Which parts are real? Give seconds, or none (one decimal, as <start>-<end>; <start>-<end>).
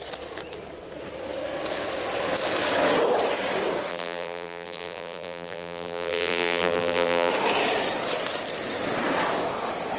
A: 0.0-3.9; 7.3-10.0